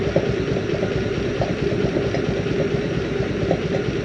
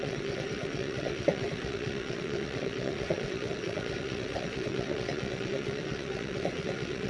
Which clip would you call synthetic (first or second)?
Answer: second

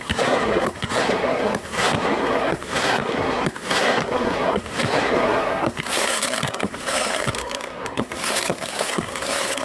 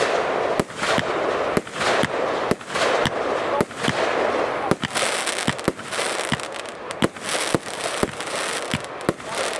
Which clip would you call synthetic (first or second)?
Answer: first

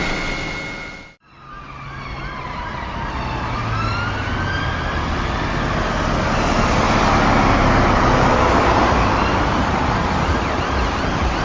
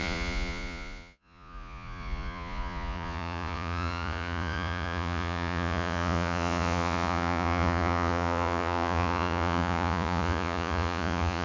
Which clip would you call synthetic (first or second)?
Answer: second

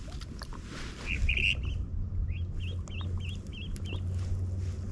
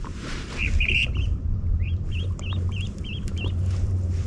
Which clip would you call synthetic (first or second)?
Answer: second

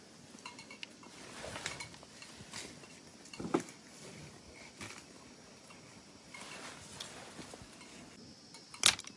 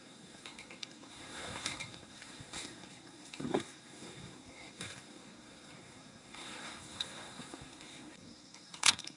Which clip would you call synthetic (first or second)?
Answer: second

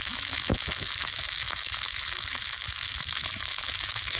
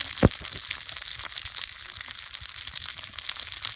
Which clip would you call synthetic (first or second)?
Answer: first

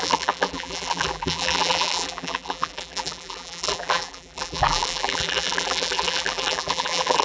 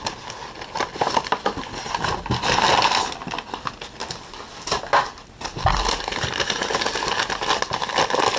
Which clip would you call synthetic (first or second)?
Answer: first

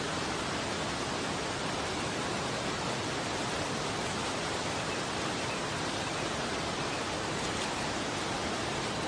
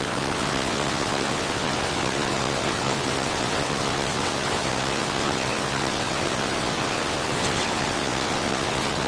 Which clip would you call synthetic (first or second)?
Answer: second